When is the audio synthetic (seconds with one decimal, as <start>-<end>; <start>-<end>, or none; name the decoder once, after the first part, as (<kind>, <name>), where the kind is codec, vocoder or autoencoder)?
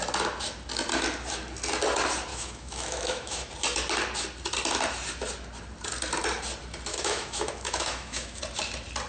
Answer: 2.3-3.5 (autoencoder, DAC-VAE); 6.9-8.4